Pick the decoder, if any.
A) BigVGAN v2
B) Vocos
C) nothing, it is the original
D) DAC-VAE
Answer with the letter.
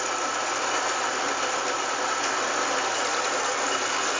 C